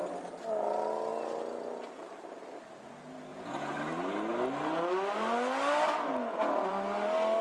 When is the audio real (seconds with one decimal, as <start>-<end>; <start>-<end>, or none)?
0.0-3.3; 3.8-7.4